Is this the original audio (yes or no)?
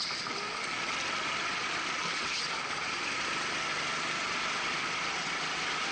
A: yes